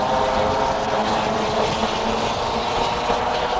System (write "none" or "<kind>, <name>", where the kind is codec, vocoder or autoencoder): none